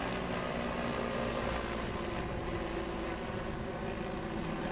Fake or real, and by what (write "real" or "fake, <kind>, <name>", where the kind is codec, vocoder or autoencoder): real